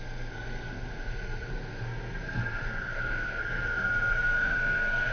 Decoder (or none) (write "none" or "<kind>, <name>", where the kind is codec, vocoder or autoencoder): codec, SNAC